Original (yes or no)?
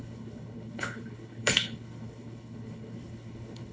no